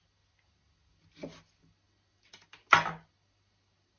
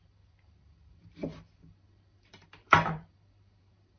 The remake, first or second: second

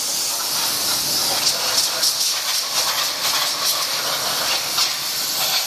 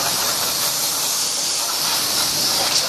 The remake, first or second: second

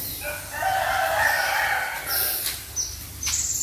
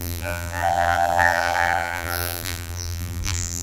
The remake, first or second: second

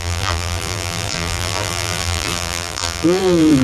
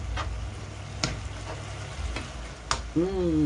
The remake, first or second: first